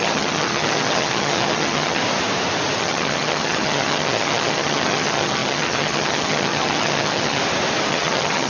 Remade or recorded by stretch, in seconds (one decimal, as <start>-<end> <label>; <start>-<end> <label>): 0.0-2.0 remade; 2.0-2.8 recorded; 2.8-7.4 remade; 7.4-7.9 recorded; 7.9-8.5 remade